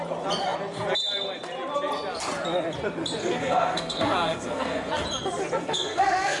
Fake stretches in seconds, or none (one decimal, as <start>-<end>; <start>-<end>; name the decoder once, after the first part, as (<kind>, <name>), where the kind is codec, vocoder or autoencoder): 3.2-4.9 (codec, SNAC); 5.6-6.4